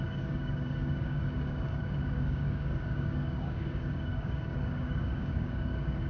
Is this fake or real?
fake